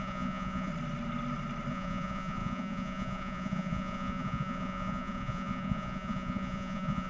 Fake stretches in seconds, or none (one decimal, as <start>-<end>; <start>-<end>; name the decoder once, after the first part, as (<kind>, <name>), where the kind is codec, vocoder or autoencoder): 0.0-0.7 (vocoder, Vocos); 1.7-7.1